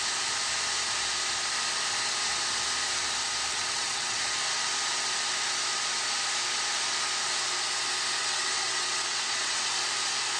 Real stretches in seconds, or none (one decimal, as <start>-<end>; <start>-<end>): 0.0-3.5; 4.2-8.2; 9.7-10.4